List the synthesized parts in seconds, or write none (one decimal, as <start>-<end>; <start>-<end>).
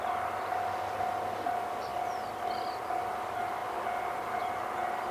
none